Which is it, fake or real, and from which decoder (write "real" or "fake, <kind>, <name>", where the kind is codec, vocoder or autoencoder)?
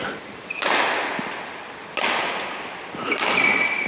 real